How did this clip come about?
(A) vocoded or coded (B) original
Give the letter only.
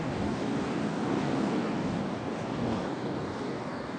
A